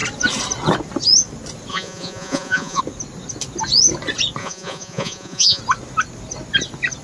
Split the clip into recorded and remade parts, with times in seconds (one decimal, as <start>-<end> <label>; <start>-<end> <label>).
0.0-1.7 recorded; 1.7-2.8 remade; 2.8-4.4 recorded; 4.4-5.6 remade; 5.6-7.0 recorded